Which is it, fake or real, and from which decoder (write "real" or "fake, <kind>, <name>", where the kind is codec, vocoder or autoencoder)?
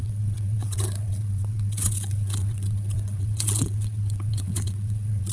fake, vocoder, WaveNeXt